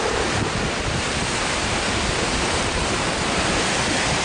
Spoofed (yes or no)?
no